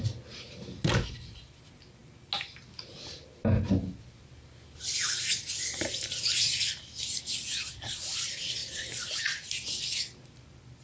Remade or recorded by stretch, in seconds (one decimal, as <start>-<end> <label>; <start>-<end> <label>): 0.0-10.8 recorded